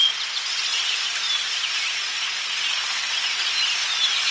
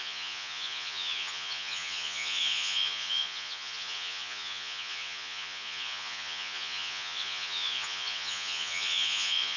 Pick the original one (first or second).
first